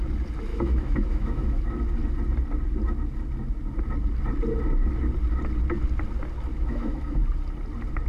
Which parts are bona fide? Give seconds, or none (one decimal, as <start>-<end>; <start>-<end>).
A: 0.0-0.5; 1.6-6.5; 7.2-8.1

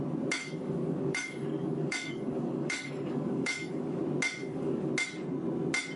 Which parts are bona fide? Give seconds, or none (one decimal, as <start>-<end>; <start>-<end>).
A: 0.0-0.4; 4.0-4.4; 4.9-6.0

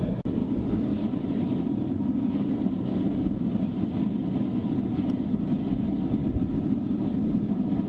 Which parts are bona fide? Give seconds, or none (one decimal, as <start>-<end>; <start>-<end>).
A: 0.0-0.4; 2.5-2.9; 4.7-7.9

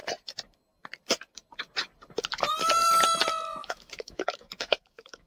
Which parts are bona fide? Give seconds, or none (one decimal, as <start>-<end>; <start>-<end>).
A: 0.0-3.6

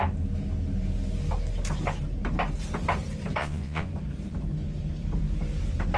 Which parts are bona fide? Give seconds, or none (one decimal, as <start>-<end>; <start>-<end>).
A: 0.0-3.4; 3.9-6.0

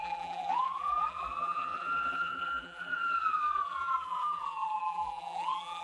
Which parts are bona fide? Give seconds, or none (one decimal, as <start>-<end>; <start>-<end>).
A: none